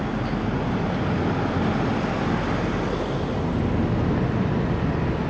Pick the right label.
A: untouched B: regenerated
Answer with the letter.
A